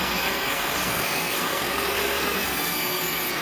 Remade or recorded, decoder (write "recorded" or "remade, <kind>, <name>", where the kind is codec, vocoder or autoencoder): remade, codec, SNAC